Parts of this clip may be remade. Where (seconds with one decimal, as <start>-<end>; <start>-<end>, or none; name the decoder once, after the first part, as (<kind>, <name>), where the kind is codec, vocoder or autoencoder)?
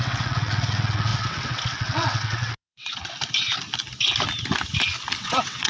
0.0-3.0 (vocoder, WaveNeXt); 5.2-5.7